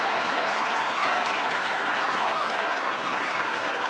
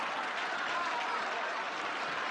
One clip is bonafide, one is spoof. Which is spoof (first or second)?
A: first